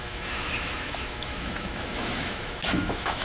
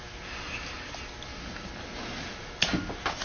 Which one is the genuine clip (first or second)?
second